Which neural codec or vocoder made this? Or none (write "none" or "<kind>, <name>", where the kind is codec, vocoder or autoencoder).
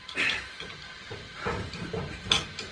none